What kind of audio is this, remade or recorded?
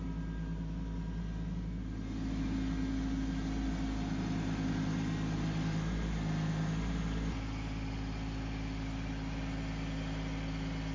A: recorded